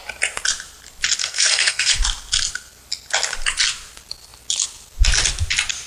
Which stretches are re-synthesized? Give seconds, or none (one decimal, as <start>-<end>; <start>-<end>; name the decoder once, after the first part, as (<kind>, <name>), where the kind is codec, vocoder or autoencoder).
1.2-2.0 (codec, SNAC)